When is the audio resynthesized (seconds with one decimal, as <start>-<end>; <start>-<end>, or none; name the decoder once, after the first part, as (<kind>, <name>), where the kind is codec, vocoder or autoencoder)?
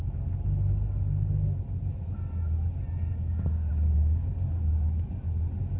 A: 3.1-3.7 (codec, DAC)